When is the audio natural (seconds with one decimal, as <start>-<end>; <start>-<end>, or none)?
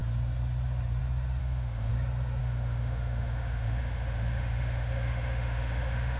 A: 0.0-1.4; 1.9-2.4